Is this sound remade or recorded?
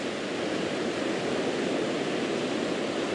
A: recorded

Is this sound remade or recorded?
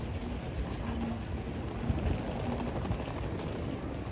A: recorded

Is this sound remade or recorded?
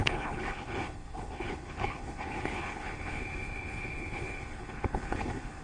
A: remade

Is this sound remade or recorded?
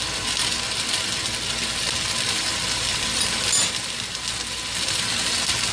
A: recorded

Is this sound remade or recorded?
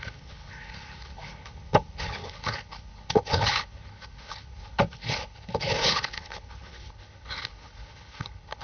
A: remade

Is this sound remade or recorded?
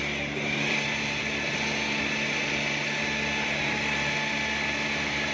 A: recorded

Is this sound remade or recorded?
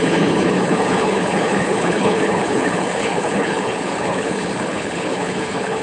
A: remade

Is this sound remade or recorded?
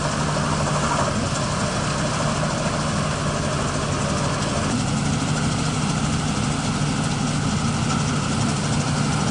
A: recorded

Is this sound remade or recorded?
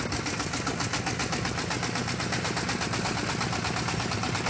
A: recorded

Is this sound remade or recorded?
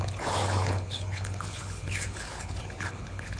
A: remade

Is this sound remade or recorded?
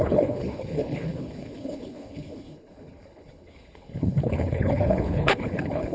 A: remade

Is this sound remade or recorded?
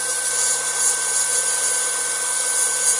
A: recorded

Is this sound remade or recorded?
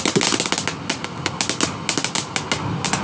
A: recorded